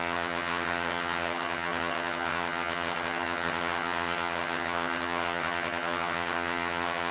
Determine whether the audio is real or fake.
fake